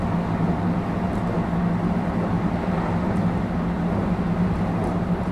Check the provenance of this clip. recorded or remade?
recorded